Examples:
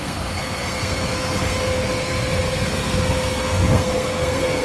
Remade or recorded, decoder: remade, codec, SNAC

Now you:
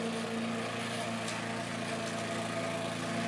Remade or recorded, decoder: recorded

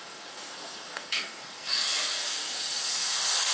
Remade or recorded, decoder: remade, codec, SNAC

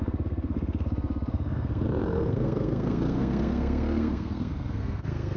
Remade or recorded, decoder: remade, codec, SNAC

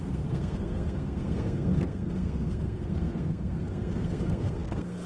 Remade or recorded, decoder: remade, codec, SNAC